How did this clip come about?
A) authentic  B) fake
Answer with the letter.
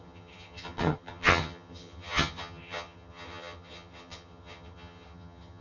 B